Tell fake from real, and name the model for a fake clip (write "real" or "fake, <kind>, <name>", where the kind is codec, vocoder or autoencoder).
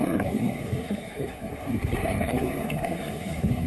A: fake, codec, SNAC